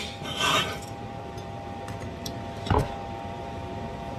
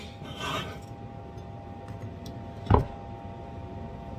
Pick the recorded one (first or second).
second